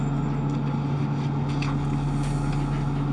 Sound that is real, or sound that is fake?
real